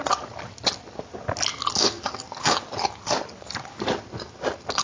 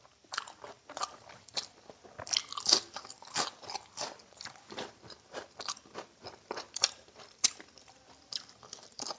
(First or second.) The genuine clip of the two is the first